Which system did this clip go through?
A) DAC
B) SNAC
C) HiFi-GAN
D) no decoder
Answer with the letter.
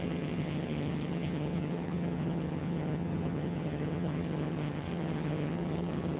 C